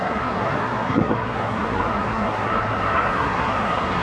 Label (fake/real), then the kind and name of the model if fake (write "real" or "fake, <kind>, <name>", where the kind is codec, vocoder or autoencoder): fake, codec, SNAC